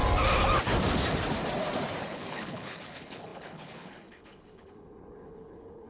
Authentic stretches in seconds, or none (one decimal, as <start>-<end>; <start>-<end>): 0.0-2.0